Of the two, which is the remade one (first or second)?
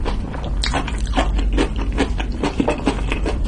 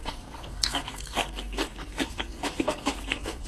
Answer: second